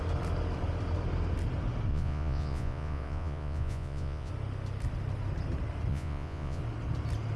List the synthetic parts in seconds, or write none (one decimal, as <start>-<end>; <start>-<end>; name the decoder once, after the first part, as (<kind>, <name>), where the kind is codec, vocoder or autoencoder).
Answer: 1.9-4.3 (vocoder, Vocos); 5.9-6.6